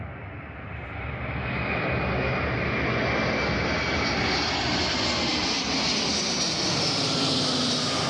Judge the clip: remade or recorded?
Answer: recorded